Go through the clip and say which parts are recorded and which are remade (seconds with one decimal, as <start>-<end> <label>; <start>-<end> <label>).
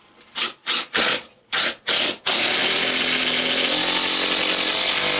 0.0-0.6 recorded; 0.6-1.7 remade; 1.7-5.2 recorded